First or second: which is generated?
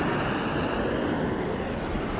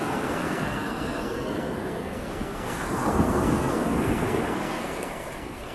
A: second